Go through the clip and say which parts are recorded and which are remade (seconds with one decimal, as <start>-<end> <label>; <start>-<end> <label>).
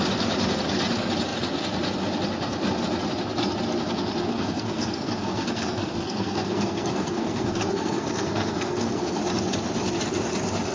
0.0-4.3 recorded; 4.3-9.2 remade; 9.2-10.7 recorded